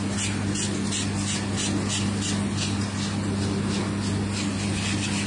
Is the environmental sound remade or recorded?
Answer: recorded